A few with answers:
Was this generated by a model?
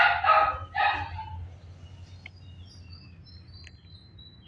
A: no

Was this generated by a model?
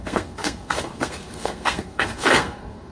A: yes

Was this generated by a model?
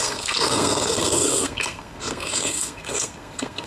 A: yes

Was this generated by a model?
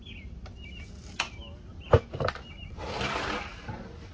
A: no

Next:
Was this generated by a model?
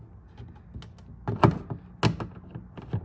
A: no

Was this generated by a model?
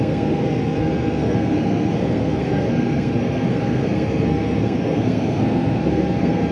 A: yes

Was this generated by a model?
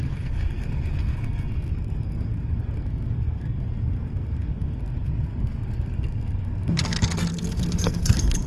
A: yes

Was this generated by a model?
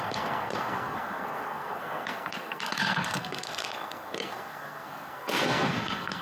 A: yes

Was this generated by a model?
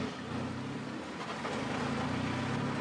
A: no